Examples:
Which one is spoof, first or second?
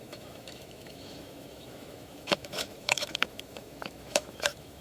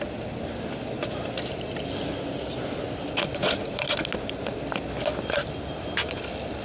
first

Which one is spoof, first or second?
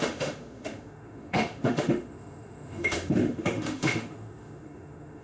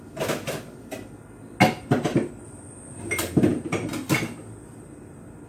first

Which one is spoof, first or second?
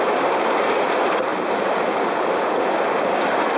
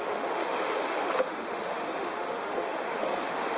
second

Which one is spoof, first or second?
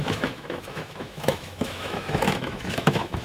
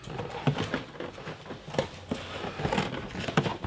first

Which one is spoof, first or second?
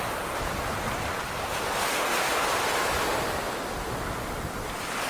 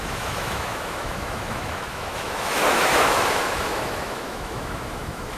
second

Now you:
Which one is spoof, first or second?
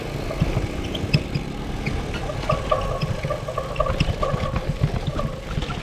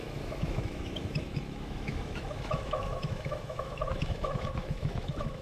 second